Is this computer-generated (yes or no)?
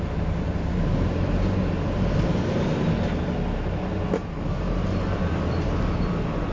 no